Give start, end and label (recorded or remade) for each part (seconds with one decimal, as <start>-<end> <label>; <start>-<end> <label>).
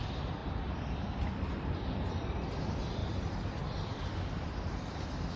0.0-0.4 recorded; 0.4-1.5 remade; 1.5-3.0 recorded; 3.0-4.1 remade; 4.1-5.4 recorded